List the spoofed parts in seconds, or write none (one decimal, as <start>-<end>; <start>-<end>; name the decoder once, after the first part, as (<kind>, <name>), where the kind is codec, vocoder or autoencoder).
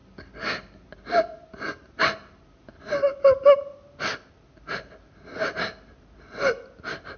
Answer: none